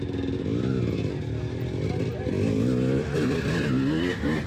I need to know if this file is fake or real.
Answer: real